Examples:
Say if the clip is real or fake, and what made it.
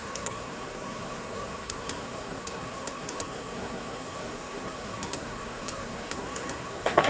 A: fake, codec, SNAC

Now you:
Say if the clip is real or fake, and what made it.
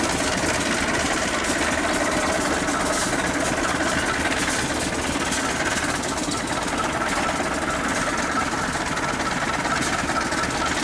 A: real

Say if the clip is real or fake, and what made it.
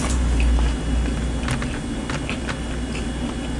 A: real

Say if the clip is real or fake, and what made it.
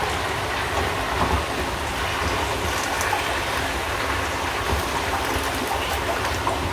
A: real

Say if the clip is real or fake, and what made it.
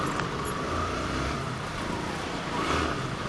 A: real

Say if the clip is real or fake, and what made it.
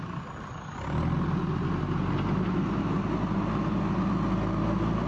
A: real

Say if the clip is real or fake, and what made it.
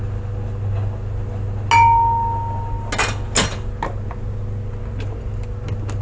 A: real